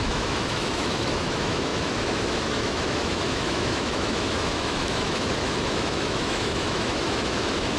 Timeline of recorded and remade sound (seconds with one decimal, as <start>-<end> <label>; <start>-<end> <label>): 0.0-7.8 remade